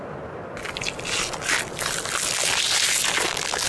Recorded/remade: recorded